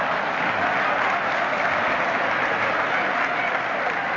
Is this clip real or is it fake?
real